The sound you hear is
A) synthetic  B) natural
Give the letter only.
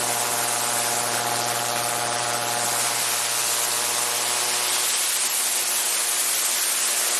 B